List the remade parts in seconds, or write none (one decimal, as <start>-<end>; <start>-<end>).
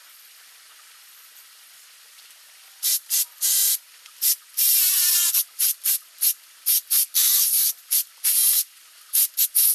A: none